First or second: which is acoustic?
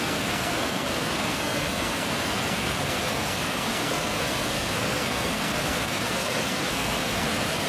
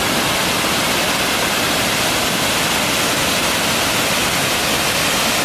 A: second